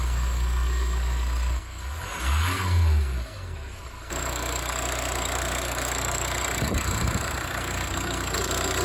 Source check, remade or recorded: remade